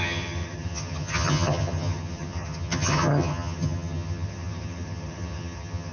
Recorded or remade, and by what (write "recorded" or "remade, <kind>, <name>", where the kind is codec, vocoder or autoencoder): remade, vocoder, HiFi-GAN